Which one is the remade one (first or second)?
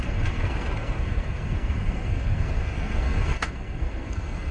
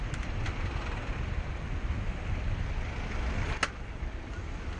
first